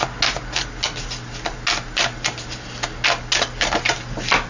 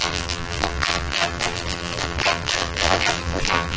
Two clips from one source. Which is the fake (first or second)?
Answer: second